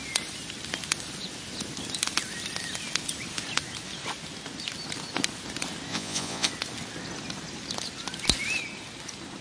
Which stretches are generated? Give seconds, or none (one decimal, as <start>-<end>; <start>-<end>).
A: 5.9-6.5